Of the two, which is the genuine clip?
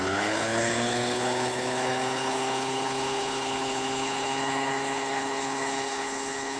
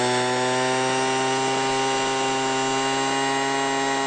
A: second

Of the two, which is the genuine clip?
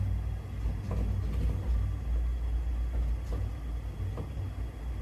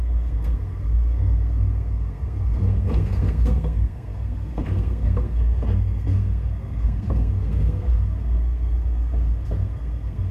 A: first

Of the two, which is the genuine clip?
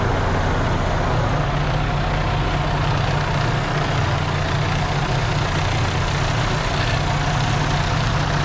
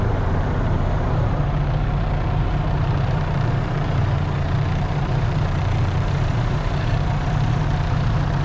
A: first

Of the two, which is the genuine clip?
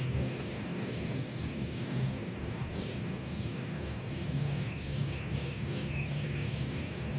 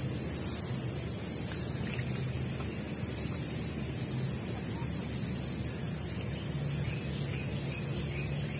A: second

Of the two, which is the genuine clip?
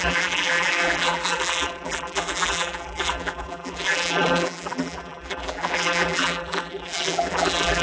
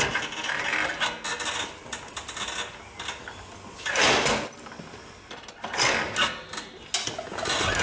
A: second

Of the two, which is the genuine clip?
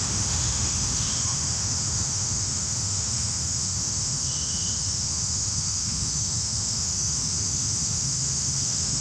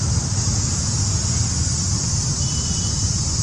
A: second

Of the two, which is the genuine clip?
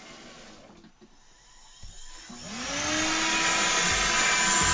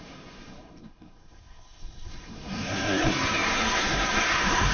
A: first